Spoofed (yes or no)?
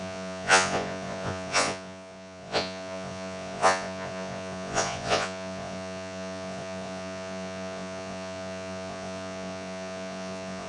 yes